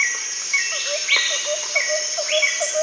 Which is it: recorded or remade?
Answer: recorded